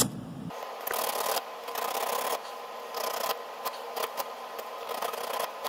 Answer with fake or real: real